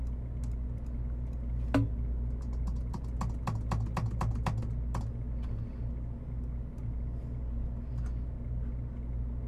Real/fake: real